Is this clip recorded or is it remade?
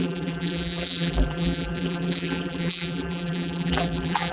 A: remade